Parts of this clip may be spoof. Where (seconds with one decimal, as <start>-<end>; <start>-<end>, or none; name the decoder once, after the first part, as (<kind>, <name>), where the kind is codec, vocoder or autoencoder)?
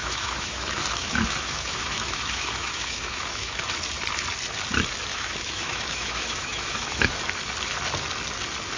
0.0-3.6 (autoencoder, DAC-VAE); 5.1-7.2